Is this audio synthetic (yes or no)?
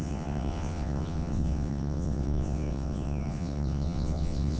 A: yes